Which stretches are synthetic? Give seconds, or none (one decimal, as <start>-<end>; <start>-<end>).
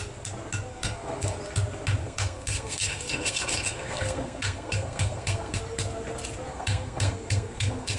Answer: 0.7-1.4; 2.0-5.6; 6.5-8.0